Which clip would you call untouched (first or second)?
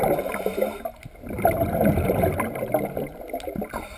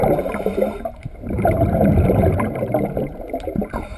first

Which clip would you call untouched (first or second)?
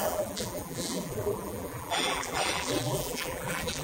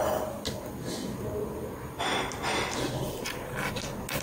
second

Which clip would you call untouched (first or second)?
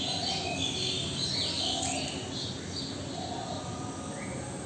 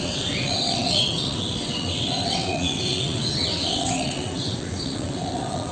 first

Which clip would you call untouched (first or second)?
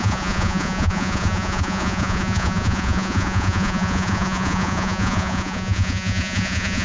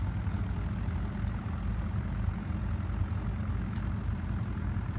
second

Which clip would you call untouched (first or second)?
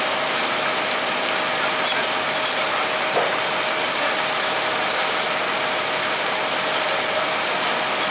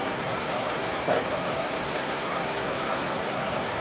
first